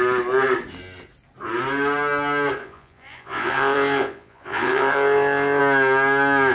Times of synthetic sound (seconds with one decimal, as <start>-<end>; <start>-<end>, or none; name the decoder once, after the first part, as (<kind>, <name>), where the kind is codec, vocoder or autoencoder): 2.6-5.6 (vocoder, Vocos)